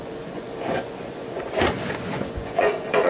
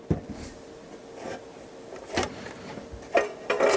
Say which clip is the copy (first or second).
first